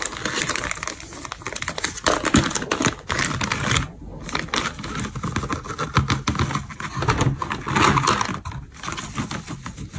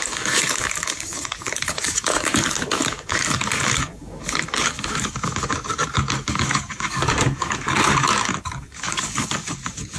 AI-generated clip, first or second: second